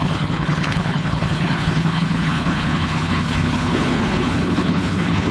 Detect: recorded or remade remade